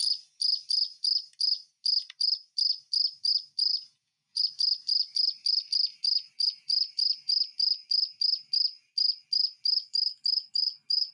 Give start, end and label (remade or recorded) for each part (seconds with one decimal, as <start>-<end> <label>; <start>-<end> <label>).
0.0-3.7 recorded; 3.7-4.4 remade; 4.4-11.1 recorded